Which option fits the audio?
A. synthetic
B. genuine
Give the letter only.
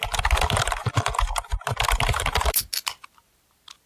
B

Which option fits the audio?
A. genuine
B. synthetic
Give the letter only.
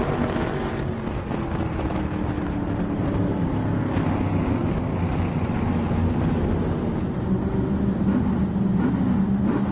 A